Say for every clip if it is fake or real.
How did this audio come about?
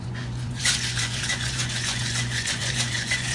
fake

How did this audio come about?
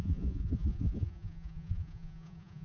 fake